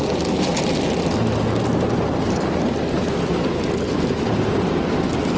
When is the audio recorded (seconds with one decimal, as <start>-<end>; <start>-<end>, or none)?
0.0-5.4